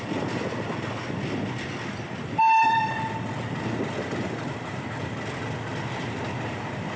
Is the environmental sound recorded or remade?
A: recorded